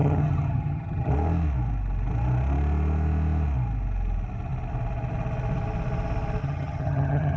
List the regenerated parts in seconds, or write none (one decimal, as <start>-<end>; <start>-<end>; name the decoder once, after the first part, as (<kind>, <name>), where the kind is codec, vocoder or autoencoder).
0.0-1.1 (vocoder, HiFi-GAN); 6.4-7.4